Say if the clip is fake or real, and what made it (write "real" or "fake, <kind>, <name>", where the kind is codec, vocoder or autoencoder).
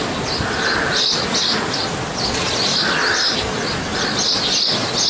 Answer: real